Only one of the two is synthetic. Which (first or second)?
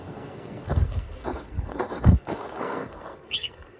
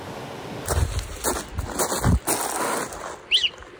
first